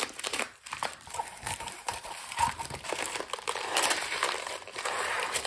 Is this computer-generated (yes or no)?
yes